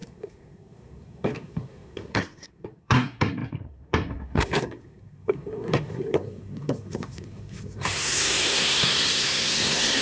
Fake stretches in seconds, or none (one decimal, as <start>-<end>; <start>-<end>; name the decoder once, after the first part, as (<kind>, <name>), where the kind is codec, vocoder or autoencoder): 0.0-10.0 (codec, SNAC)